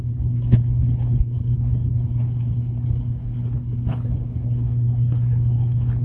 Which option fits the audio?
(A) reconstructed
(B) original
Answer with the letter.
A